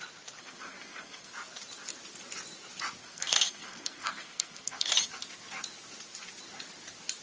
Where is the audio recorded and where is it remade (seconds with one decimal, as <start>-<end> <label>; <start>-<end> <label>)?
0.0-0.4 recorded; 0.4-1.3 remade; 1.3-3.0 recorded; 3.0-4.9 remade; 4.9-7.2 recorded